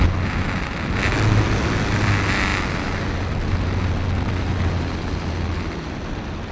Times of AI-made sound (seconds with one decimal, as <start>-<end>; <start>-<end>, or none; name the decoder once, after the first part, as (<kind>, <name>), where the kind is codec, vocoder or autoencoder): none